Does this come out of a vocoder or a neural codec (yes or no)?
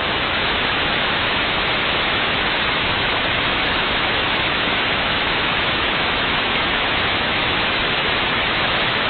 yes